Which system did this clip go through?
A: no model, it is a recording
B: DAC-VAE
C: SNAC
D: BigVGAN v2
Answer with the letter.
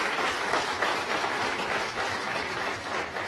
B